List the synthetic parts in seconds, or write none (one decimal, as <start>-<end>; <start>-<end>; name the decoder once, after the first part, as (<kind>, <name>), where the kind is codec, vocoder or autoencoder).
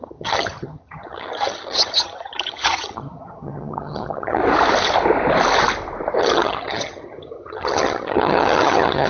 0.0-4.4 (vocoder, HiFi-GAN); 6.2-9.1